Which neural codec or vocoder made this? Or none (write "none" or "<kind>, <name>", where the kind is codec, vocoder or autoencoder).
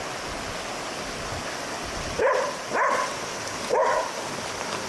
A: none